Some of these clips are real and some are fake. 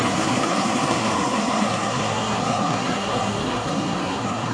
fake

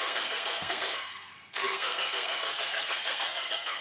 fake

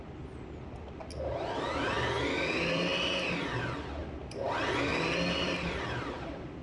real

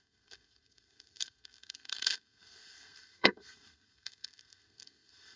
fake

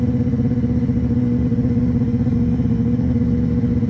real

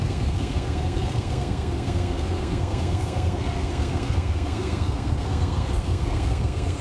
fake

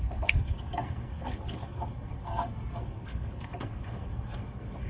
fake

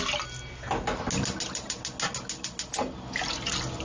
real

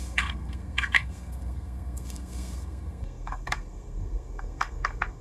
fake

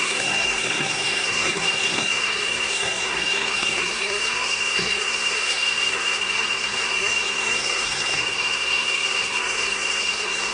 fake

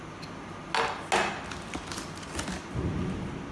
real